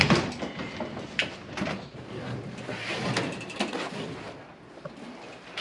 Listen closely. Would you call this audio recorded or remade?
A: recorded